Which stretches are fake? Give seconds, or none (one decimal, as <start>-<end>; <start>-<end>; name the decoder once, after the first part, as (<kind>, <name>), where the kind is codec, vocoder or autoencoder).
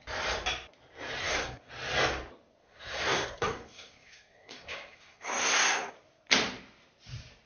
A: 1.2-1.7 (codec, SNAC); 2.6-5.9